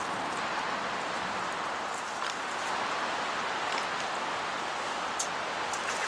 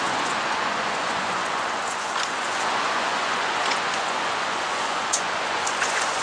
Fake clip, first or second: second